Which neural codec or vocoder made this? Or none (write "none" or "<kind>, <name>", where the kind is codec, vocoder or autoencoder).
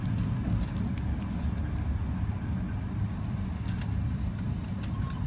none